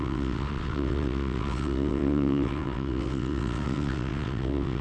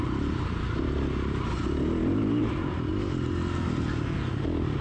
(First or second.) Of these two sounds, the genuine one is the second